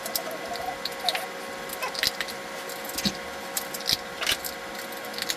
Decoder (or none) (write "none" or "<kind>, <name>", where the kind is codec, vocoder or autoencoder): none